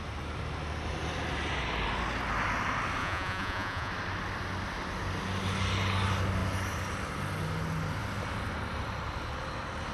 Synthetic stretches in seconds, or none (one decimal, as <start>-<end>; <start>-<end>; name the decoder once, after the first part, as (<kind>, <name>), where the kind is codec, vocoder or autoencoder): 3.0-3.9 (vocoder, Vocos)